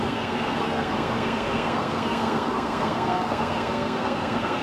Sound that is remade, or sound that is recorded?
remade